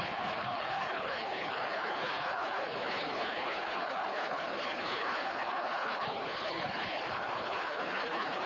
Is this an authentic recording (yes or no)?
no